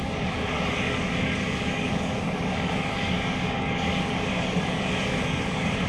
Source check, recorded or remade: remade